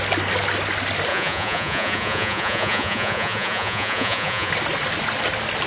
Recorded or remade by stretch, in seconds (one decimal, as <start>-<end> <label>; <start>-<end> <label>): 0.0-1.1 recorded; 1.1-4.5 remade; 4.5-5.7 recorded